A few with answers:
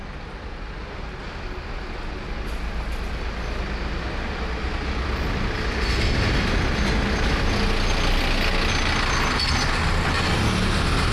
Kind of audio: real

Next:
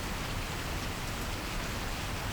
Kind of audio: real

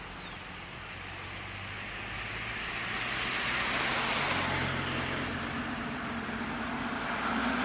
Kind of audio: real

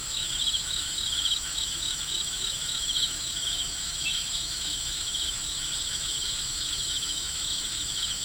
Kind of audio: fake